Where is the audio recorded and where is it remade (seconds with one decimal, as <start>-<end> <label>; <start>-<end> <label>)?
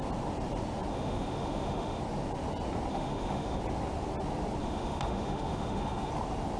0.0-0.9 recorded; 0.9-2.0 remade; 2.0-2.9 recorded; 2.9-3.6 remade; 3.6-4.6 recorded; 4.6-6.1 remade; 6.1-6.6 recorded